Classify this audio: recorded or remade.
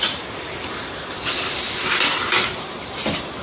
recorded